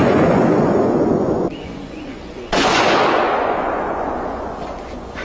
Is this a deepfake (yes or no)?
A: yes